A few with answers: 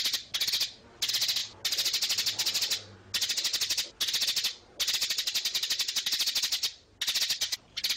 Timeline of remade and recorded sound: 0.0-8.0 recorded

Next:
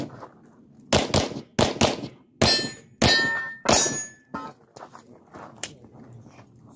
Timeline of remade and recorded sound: 0.0-6.8 recorded

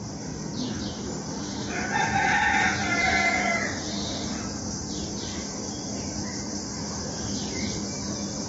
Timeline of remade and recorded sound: 0.0-8.5 recorded